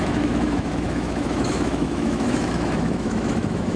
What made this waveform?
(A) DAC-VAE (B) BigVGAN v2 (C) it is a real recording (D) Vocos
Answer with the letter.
A